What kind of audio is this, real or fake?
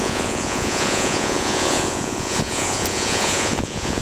fake